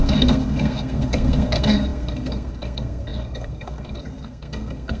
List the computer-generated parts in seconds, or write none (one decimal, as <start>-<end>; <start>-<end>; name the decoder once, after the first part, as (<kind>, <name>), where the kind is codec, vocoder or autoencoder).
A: 0.0-5.0 (codec, SNAC)